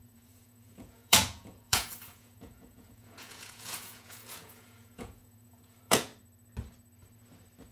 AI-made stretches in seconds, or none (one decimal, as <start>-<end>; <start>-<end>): 0.0-6.1